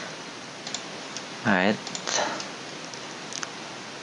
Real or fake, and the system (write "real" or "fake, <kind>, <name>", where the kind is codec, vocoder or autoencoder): real